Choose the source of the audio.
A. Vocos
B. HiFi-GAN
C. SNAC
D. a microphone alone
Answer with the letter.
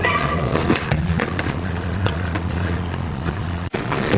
A